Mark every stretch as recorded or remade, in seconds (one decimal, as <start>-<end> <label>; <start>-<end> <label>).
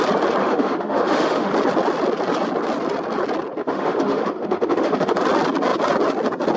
0.0-0.4 recorded; 0.4-1.5 remade; 1.5-3.6 recorded; 3.6-5.2 remade; 5.2-6.6 recorded